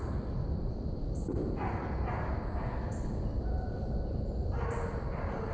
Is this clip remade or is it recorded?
recorded